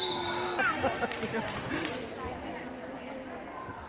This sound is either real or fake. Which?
fake